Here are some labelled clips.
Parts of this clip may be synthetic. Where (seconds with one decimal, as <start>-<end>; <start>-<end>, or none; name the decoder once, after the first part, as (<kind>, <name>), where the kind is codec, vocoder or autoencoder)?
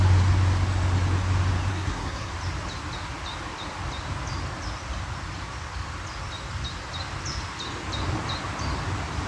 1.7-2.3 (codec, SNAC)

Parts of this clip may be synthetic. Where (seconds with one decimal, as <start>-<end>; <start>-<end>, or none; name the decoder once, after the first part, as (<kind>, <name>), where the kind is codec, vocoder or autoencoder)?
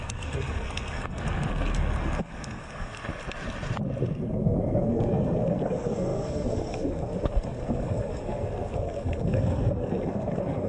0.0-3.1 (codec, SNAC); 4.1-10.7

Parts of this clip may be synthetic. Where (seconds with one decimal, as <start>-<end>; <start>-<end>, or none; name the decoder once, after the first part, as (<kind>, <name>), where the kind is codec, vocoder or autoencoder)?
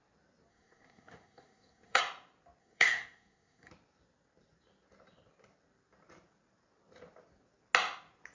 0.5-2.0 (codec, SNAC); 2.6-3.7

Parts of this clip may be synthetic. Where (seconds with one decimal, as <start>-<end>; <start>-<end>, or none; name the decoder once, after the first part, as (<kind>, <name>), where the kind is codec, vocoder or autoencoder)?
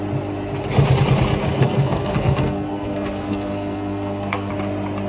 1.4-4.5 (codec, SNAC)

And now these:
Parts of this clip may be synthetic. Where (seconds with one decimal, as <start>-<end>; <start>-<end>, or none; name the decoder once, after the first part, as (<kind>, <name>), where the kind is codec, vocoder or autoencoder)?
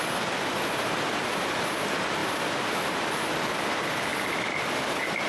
none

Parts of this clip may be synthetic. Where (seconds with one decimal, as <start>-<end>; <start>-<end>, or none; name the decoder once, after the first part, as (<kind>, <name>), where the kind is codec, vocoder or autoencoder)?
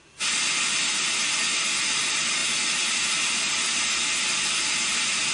none